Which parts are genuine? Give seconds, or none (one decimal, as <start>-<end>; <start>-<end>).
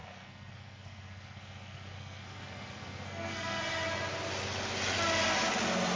3.6-6.0